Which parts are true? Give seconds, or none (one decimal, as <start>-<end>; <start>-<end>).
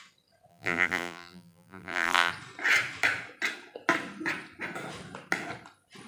0.0-0.5; 2.3-6.1